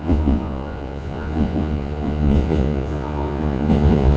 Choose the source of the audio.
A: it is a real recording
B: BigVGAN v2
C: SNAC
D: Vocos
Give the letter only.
D